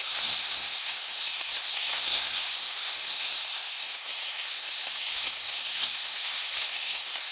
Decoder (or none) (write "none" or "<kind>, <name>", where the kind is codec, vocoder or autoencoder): codec, SNAC